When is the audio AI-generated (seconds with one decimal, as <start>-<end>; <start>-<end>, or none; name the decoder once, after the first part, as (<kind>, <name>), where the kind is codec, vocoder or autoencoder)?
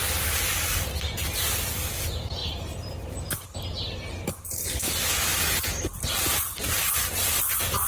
none